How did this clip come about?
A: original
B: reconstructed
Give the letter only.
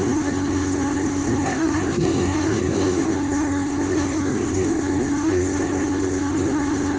B